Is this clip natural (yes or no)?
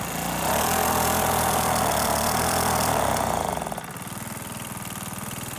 no